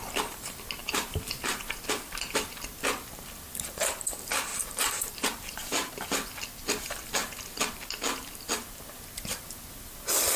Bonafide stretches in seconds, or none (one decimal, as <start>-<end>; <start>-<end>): 0.0-0.8; 1.8-4.5; 5.9-10.4